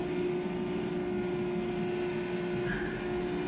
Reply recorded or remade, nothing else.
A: recorded